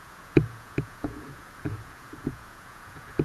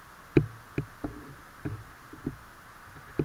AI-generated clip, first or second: first